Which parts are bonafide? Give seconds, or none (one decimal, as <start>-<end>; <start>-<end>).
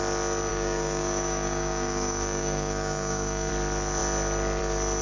0.0-0.5; 3.5-5.0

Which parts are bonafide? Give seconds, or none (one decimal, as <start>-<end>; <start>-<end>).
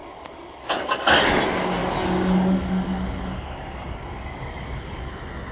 0.7-1.8; 5.1-5.5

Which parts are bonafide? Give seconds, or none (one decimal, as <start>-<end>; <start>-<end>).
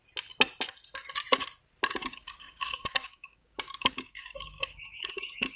0.0-1.9